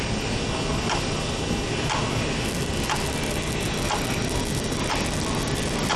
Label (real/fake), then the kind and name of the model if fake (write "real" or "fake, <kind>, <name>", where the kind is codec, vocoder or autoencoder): real